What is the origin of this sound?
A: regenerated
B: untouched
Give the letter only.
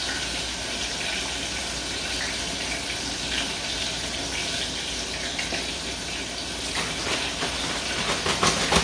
B